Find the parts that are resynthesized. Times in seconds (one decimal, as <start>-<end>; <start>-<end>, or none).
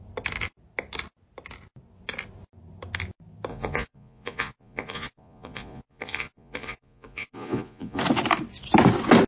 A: 3.5-8.0